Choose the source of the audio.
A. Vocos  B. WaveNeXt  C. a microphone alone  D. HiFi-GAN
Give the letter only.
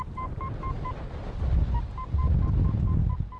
C